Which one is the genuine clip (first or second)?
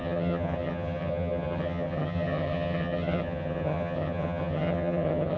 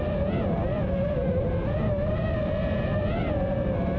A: second